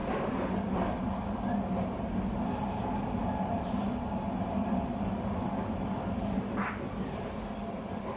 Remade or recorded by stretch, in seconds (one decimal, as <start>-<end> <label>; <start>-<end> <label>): 0.0-8.2 recorded

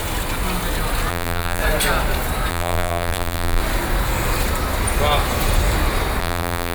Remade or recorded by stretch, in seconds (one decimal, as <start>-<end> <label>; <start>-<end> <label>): 0.0-1.1 recorded; 1.1-1.6 remade; 1.6-2.5 recorded; 2.5-3.6 remade; 3.6-6.2 recorded; 6.2-6.7 remade

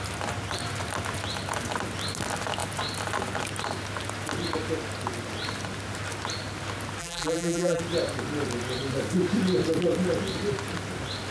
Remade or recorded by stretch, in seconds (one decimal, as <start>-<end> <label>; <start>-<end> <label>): 0.0-7.0 recorded; 7.0-7.8 remade; 7.8-11.3 recorded